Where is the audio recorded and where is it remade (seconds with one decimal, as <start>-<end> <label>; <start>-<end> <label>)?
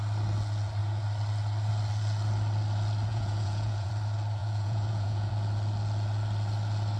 0.0-3.1 recorded; 3.1-3.9 remade; 3.9-4.4 recorded; 4.4-5.3 remade; 5.3-7.0 recorded